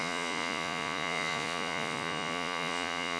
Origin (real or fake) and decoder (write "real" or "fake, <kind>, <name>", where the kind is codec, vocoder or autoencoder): fake, vocoder, Vocos